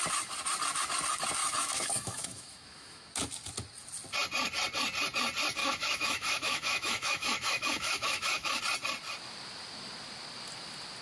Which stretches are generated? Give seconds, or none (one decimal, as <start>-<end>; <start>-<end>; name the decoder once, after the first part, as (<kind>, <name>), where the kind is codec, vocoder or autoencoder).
1.4-3.1 (autoencoder, DAC-VAE); 5.6-8.6